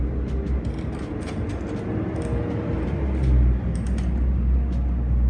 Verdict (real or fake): real